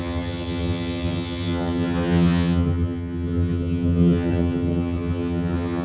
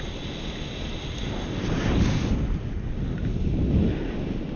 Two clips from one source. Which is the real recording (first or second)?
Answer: second